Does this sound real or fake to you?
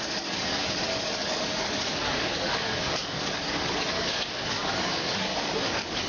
fake